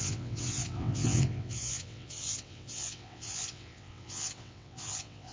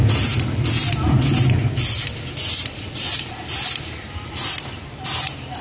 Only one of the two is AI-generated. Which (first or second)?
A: first